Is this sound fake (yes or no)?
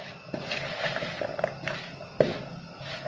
no